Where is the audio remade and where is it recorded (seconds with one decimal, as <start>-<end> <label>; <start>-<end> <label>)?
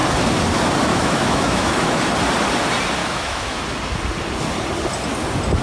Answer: 0.0-0.9 recorded; 0.9-2.0 remade; 2.0-3.0 recorded; 3.0-3.6 remade; 3.6-5.6 recorded